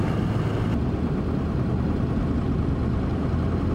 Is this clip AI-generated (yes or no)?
no